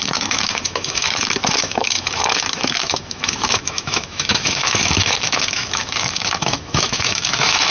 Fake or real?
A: fake